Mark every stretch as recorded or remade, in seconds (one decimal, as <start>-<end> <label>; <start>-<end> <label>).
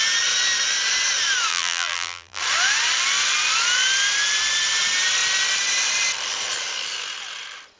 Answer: 0.0-1.5 recorded; 1.5-2.4 remade; 2.4-7.8 recorded